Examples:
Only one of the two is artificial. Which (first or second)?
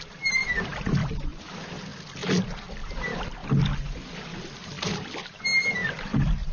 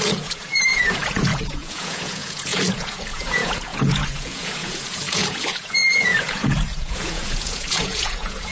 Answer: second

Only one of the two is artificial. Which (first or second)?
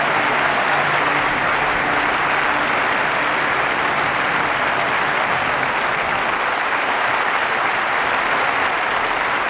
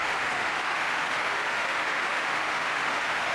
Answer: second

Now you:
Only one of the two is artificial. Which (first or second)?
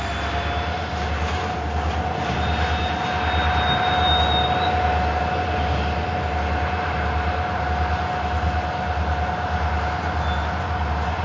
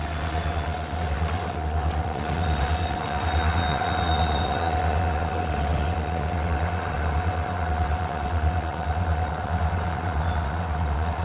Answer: second